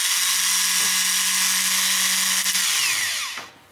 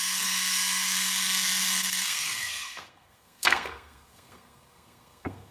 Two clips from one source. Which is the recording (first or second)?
first